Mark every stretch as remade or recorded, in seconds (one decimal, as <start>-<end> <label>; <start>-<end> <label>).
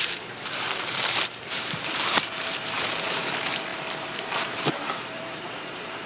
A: 0.0-6.1 remade